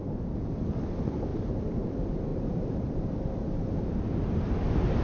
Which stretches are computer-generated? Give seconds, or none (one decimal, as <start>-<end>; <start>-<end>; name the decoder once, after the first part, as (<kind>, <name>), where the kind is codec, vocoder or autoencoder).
1.3-1.9 (vocoder, BigVGAN v2); 2.3-3.0

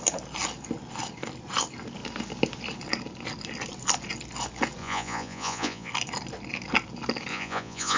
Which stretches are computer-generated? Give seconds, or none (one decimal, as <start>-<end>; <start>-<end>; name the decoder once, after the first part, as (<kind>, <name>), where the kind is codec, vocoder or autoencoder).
4.8-5.9 (vocoder, Vocos); 7.3-8.0